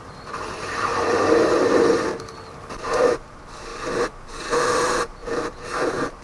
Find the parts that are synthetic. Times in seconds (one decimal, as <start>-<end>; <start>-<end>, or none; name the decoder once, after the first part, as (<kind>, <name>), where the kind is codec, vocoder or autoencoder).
0.0-0.9 (vocoder, BigVGAN v2); 2.5-3.7; 4.4-6.2